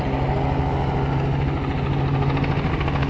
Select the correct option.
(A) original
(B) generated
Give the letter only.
A